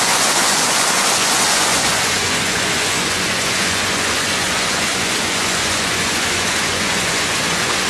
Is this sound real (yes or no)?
no